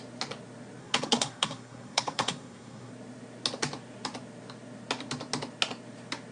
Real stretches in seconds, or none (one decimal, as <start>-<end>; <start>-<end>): 0.0-0.8; 2.9-6.3